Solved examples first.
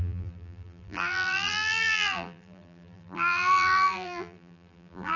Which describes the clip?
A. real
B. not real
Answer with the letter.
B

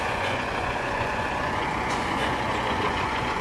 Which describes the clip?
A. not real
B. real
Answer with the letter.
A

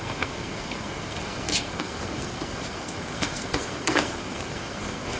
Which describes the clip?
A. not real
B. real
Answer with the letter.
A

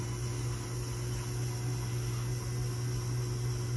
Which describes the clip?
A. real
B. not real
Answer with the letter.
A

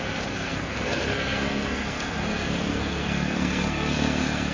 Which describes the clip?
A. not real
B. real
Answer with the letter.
A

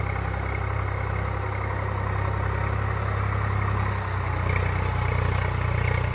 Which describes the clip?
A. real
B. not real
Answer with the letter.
A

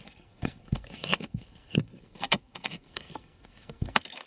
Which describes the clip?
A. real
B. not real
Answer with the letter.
B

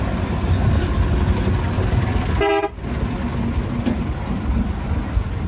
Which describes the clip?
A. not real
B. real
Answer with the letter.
B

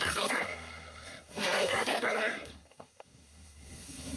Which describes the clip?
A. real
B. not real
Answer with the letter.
B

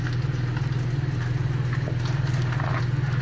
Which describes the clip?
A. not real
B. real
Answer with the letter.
B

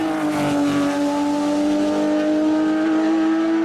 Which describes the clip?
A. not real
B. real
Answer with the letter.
B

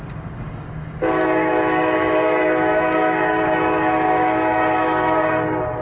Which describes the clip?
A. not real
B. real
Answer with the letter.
A